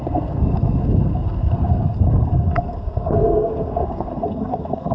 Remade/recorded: remade